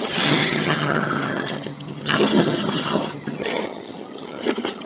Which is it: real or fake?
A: fake